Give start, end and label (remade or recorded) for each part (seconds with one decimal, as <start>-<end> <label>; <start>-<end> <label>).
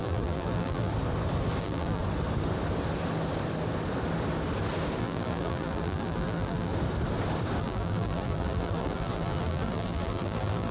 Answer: 0.0-0.9 remade; 0.9-1.6 recorded; 1.6-2.0 remade; 2.0-5.0 recorded; 5.0-6.7 remade; 6.7-7.6 recorded; 7.6-10.7 remade